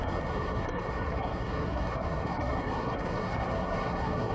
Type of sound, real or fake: fake